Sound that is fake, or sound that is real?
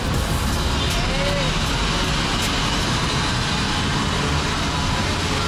real